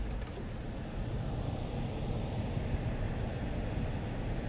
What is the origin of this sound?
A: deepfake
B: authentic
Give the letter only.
B